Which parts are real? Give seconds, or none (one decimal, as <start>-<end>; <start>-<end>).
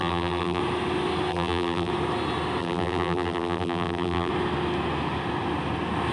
0.6-1.3; 1.9-2.6; 4.3-6.1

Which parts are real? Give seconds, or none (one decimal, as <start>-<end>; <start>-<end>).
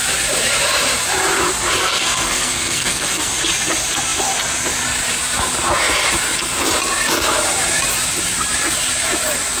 0.0-1.8; 3.3-9.6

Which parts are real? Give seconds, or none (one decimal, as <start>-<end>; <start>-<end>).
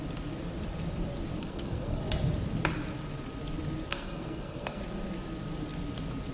0.0-1.4; 2.0-3.9; 4.8-6.3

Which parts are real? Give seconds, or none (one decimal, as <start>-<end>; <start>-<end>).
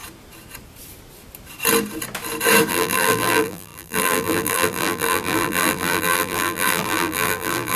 0.0-2.7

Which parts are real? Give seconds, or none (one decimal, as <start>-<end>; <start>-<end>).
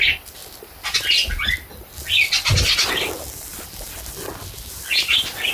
0.0-5.5